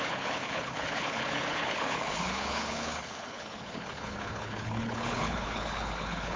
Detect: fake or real fake